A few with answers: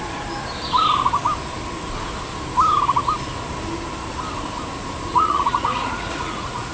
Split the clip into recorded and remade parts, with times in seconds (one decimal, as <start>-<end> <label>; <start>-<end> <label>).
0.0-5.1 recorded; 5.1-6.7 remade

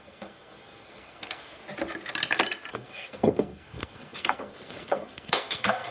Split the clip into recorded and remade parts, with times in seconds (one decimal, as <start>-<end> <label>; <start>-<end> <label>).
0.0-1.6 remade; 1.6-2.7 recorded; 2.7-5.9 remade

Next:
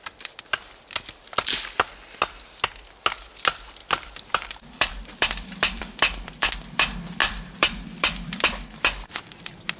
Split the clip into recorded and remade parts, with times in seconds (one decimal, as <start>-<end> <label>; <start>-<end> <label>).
0.0-3.8 recorded; 3.8-6.5 remade; 6.5-7.2 recorded; 7.2-8.9 remade; 8.9-9.8 recorded

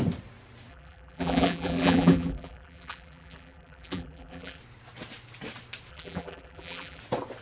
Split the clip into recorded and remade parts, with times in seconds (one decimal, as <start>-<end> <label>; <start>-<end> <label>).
0.0-0.7 recorded; 0.7-4.6 remade; 4.6-5.9 recorded; 5.9-7.0 remade; 7.0-7.4 recorded

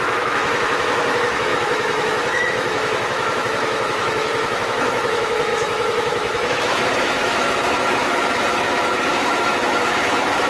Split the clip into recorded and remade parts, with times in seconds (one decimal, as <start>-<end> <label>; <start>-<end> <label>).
0.0-10.5 remade

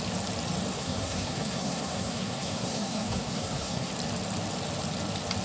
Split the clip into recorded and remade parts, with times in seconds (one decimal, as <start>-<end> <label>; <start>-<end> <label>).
0.0-0.7 recorded; 0.7-3.9 remade; 3.9-5.4 recorded

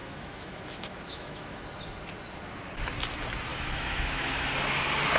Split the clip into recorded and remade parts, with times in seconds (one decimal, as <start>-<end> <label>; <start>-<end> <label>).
0.0-1.6 remade; 1.6-3.5 recorded; 3.5-4.4 remade; 4.4-5.2 recorded

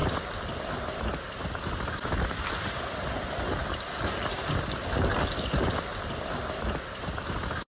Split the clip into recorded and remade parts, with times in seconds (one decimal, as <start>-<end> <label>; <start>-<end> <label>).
0.0-7.7 recorded